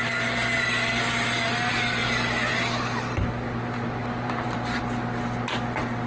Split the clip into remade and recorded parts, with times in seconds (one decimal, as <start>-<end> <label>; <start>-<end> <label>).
0.0-4.0 recorded; 4.0-4.8 remade; 4.8-6.1 recorded